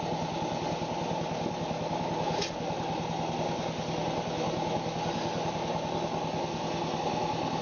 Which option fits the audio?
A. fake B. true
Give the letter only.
B